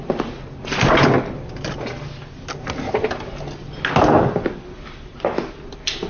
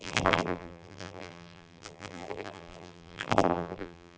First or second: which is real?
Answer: first